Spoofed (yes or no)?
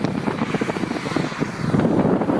no